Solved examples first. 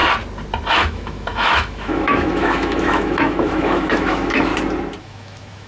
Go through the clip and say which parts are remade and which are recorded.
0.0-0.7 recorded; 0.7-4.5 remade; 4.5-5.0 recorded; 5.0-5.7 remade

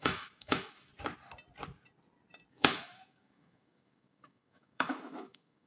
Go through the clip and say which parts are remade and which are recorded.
0.0-0.9 remade; 0.9-2.5 recorded; 2.5-5.7 remade

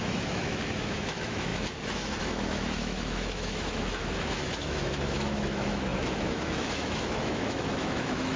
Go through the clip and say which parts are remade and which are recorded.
0.0-8.4 remade

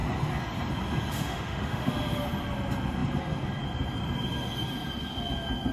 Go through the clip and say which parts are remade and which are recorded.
0.0-1.1 recorded; 1.1-1.9 remade; 1.9-5.7 recorded

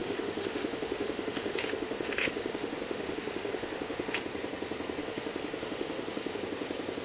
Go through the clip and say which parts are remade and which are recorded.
0.0-4.2 remade; 4.2-5.0 recorded; 5.0-6.4 remade; 6.4-7.0 recorded